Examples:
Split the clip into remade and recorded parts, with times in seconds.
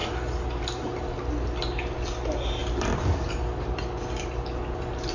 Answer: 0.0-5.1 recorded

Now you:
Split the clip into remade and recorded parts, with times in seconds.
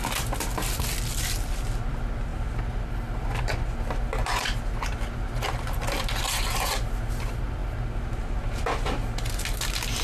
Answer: 0.0-10.0 recorded